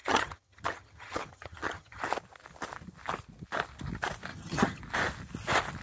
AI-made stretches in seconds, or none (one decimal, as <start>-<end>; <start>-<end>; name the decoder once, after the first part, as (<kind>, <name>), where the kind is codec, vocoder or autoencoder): 0.0-2.0 (vocoder, HiFi-GAN); 4.3-4.8